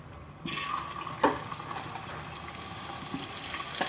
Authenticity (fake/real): real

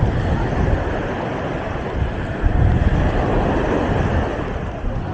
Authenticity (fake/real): real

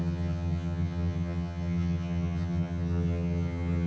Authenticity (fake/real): fake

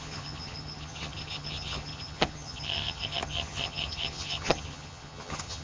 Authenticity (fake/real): fake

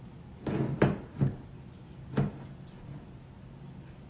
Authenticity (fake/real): real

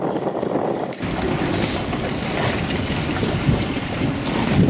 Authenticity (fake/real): real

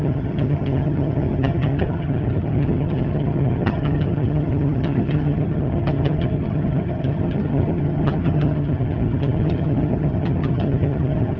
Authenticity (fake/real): fake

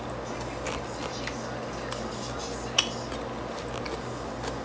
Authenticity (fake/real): real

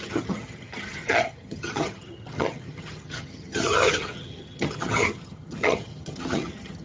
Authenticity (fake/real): fake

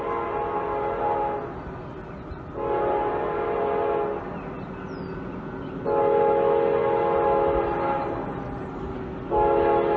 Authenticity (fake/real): real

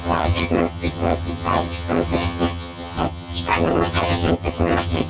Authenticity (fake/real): fake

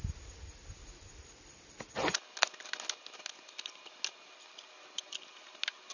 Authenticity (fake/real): real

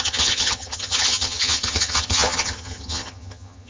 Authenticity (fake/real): fake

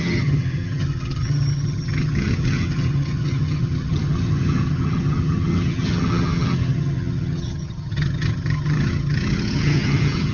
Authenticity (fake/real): fake